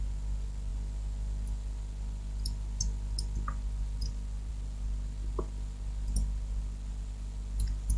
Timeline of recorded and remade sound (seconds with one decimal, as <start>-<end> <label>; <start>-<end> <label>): 0.0-8.0 recorded